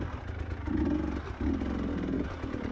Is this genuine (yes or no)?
yes